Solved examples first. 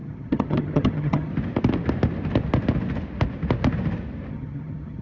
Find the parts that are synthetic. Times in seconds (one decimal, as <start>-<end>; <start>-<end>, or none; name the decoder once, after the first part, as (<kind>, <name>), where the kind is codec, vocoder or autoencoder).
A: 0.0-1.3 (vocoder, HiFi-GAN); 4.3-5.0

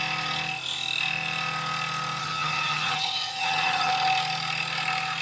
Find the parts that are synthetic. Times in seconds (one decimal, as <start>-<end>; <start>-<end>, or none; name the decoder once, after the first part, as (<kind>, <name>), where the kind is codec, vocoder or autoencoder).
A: 2.2-3.9 (vocoder, HiFi-GAN)

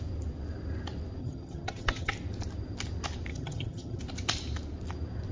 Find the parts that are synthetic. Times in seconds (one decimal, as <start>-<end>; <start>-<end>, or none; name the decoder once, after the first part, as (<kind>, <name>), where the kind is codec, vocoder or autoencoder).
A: 1.2-2.1 (vocoder, HiFi-GAN); 3.3-4.0

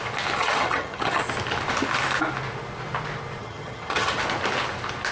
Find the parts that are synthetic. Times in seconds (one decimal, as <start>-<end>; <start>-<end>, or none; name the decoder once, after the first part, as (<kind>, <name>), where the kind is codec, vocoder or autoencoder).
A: 0.4-1.2 (vocoder, HiFi-GAN); 3.4-4.2